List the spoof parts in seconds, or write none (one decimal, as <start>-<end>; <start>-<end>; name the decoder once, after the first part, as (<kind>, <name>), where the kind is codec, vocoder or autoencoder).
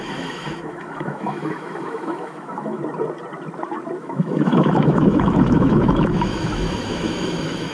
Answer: 0.0-2.8 (autoencoder, DAC-VAE); 4.0-7.7